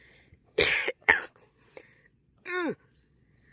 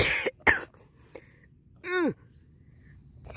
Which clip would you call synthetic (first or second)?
first